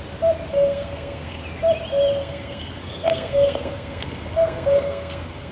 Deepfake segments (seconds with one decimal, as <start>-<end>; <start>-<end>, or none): 0.5-1.4; 2.2-5.5

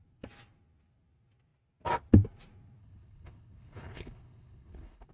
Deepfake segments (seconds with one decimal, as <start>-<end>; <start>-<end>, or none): 2.8-5.1

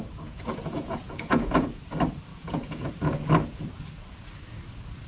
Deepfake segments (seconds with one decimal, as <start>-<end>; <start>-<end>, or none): 0.0-1.8; 2.3-2.9

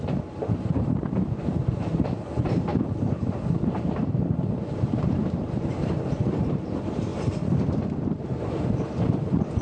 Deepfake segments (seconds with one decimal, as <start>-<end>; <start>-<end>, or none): 0.0-2.7; 3.3-9.6